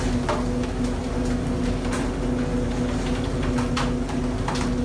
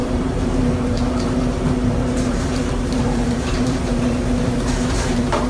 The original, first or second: first